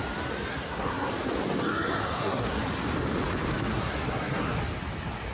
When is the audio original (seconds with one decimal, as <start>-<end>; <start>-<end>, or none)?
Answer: 0.0-0.5; 1.1-1.7; 2.6-3.6; 4.6-5.3